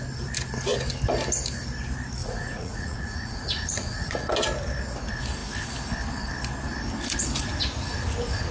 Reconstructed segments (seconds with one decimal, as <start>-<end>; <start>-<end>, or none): 2.2-4.3